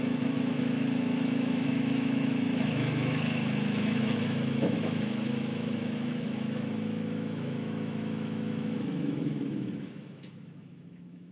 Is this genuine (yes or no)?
no